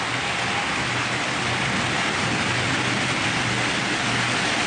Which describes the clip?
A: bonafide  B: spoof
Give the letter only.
A